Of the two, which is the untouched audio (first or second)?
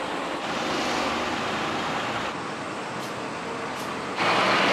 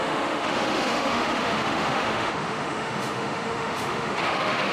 first